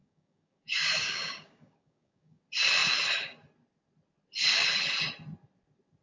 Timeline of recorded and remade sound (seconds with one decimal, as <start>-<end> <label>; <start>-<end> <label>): 0.0-2.4 remade; 2.4-6.0 recorded